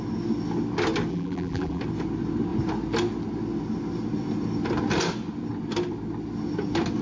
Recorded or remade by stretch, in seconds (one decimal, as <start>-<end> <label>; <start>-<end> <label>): 0.0-1.1 recorded; 1.1-1.8 remade; 1.8-7.0 recorded